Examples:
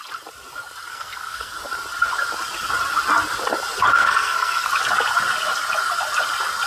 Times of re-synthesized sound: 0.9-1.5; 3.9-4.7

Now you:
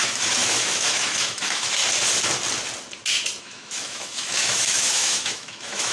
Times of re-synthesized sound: 0.0-1.8; 3.4-5.9

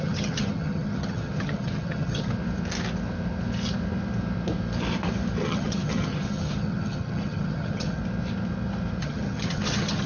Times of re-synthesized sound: 0.0-2.3; 5.4-8.0; 9.0-10.1

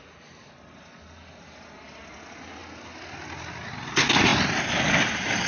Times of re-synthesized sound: none